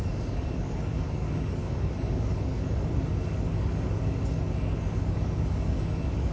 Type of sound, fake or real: fake